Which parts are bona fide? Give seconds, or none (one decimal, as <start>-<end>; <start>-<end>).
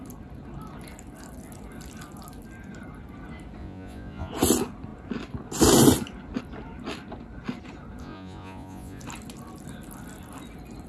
0.0-3.6; 4.3-8.0; 9.0-10.9